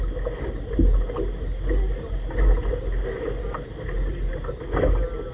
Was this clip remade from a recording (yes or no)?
no